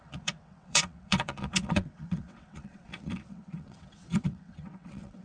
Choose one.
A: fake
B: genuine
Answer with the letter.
A